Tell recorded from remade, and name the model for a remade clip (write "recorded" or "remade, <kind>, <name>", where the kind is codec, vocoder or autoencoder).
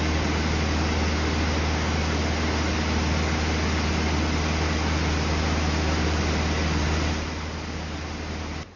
recorded